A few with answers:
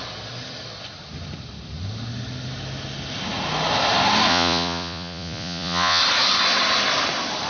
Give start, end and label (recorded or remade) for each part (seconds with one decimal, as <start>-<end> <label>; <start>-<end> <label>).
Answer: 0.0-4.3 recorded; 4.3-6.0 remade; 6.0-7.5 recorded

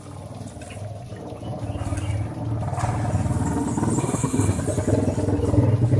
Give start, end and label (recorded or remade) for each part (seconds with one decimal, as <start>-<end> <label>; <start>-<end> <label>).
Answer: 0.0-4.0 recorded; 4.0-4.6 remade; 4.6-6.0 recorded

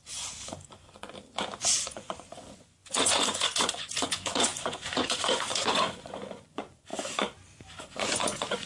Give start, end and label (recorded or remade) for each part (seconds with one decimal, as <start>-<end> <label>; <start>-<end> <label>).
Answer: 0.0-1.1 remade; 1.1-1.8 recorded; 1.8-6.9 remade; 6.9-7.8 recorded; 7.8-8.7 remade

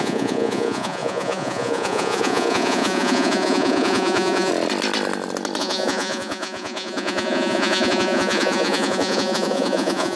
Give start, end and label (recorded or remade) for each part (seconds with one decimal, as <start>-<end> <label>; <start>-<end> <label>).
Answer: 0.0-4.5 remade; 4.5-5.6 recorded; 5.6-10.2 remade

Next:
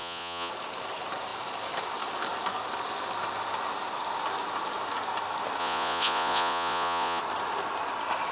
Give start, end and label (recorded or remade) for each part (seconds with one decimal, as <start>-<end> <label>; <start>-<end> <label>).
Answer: 0.0-0.5 remade; 0.5-5.6 recorded; 5.6-7.2 remade; 7.2-8.3 recorded

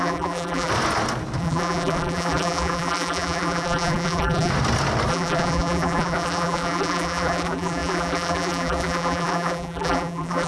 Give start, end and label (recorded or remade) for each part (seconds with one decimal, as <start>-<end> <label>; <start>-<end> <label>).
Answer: 0.0-0.7 remade; 0.7-1.4 recorded; 1.4-4.5 remade; 4.5-5.1 recorded; 5.1-10.5 remade

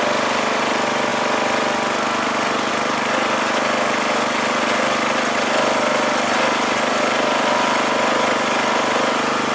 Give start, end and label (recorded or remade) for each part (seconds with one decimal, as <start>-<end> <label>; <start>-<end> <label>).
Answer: 0.0-9.5 recorded